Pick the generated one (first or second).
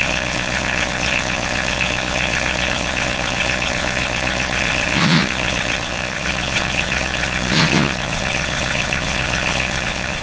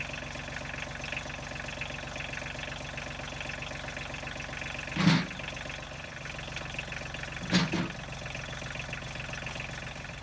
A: first